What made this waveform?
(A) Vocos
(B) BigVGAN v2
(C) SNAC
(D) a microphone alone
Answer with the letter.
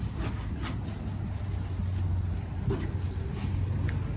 D